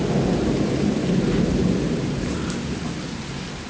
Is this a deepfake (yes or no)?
no